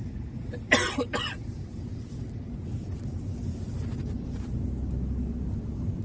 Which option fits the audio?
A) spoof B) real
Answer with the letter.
B